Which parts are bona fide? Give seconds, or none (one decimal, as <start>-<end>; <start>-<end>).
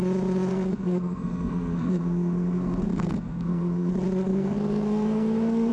0.0-0.5; 3.9-4.3